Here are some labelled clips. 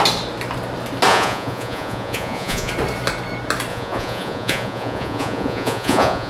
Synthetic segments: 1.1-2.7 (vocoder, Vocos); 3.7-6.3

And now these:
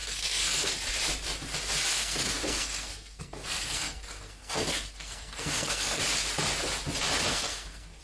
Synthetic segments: 0.0-0.7 (codec, SNAC); 1.9-6.0; 7.3-8.0

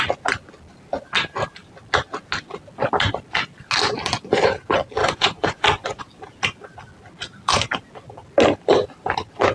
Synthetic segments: 5.0-6.0 (vocoder, Vocos)

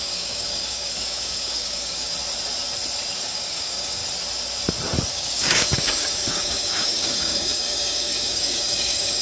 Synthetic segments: 0.0-2.1 (codec, DAC); 3.2-4.0; 5.1-9.2

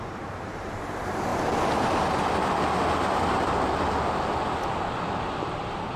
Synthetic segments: 0.0-1.3 (vocoder, BigVGAN v2); 4.8-6.0

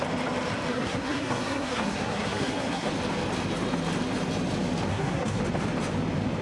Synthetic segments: 0.7-2.9 (codec, SNAC); 4.9-5.4

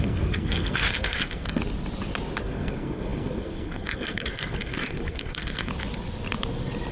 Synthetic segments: 0.0-1.6 (codec, SNAC); 2.4-5.7

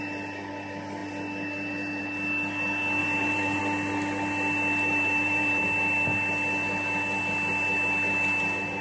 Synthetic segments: 3.0-3.6 (vocoder, BigVGAN v2); 4.9-5.6